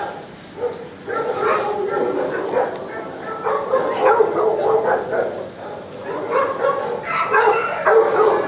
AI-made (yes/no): no